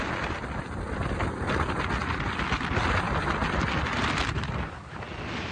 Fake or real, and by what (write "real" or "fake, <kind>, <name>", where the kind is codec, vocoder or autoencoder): real